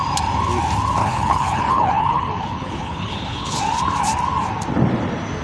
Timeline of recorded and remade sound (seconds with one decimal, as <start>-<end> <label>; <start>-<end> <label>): 0.0-1.0 recorded; 1.0-3.6 remade; 3.6-5.4 recorded